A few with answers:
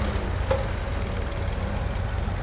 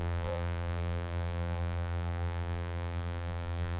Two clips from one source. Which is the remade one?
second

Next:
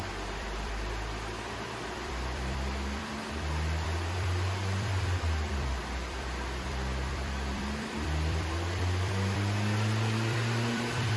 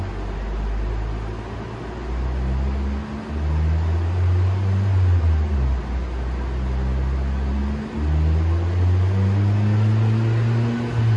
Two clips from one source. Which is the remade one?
first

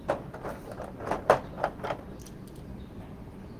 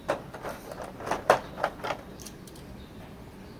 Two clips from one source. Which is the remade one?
second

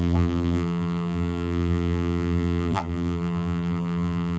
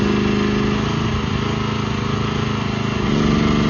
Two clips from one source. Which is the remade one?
first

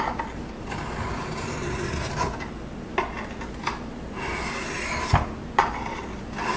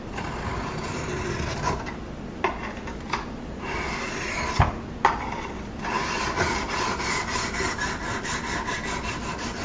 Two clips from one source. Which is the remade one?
second